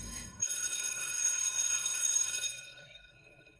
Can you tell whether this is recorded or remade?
remade